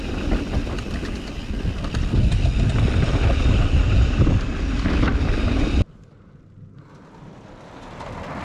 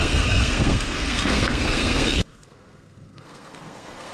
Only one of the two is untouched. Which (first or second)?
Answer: first